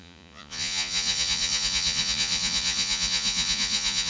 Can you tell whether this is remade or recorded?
remade